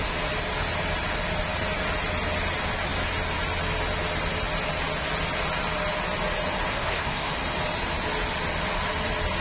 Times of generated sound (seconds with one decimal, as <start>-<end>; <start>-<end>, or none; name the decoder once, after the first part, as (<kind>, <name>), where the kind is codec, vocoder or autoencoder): 6.7-7.3 (codec, SNAC)